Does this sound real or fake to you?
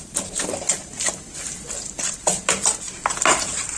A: real